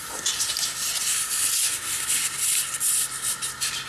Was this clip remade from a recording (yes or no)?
no